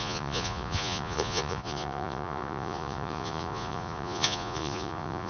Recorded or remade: remade